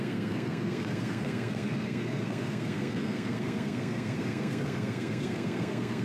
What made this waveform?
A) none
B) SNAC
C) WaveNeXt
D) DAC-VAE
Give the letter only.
B